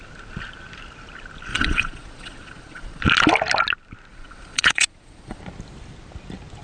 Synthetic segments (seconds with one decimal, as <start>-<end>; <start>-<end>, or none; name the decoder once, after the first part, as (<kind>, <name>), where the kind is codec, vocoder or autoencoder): 1.5-3.0 (vocoder, Vocos); 4.1-5.4